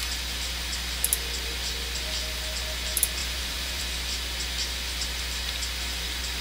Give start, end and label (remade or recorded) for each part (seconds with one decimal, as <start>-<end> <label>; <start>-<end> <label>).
0.0-3.2 recorded; 3.2-3.8 remade; 3.8-6.4 recorded